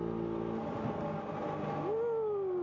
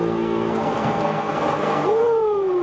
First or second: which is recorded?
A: first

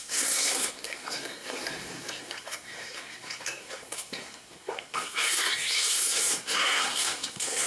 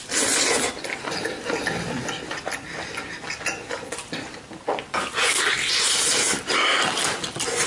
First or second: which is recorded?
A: second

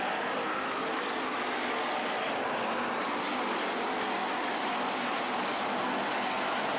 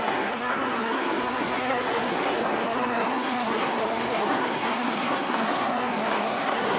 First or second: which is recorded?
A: first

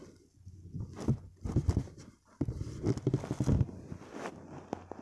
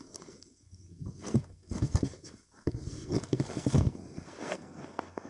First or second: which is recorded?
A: first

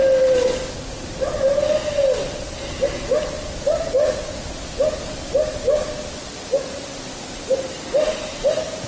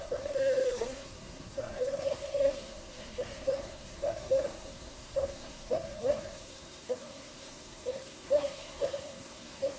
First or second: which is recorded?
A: first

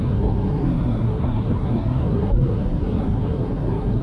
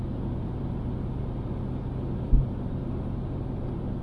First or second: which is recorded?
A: second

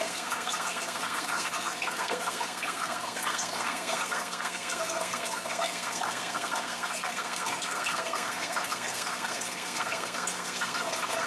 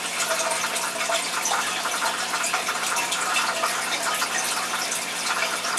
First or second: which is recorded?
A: second